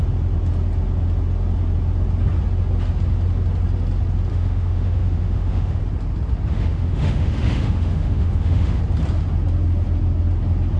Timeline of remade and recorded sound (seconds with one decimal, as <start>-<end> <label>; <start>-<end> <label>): 0.0-4.3 recorded; 4.3-5.8 remade; 5.8-6.5 recorded; 6.5-8.8 remade; 8.8-10.8 recorded